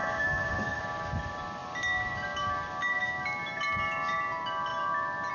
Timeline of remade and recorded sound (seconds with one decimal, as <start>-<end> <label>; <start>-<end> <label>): 0.0-0.8 remade; 0.8-5.3 recorded

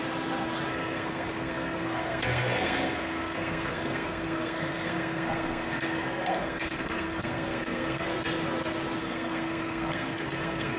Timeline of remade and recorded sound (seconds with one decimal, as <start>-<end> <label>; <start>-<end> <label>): 0.0-0.7 recorded; 0.7-8.1 remade; 8.1-9.0 recorded; 9.0-10.8 remade

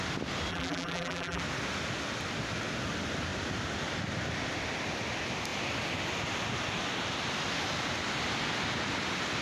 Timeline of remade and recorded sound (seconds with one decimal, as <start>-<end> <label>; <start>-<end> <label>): 0.0-0.5 recorded; 0.5-1.4 remade; 1.4-9.4 recorded

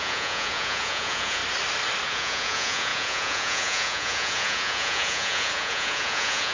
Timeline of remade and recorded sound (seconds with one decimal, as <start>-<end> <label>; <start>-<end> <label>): 0.0-1.4 remade; 1.4-2.1 recorded; 2.1-6.5 remade

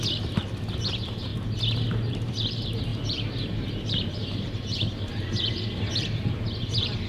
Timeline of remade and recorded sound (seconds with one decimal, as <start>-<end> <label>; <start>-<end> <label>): 0.0-1.3 remade; 1.3-2.1 recorded; 2.1-7.1 remade

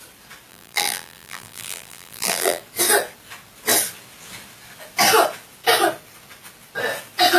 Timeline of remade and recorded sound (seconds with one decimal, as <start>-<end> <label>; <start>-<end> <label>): 0.0-0.5 recorded; 0.5-2.6 remade; 2.6-7.4 recorded